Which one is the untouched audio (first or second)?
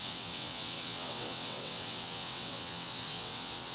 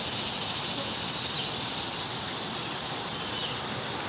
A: second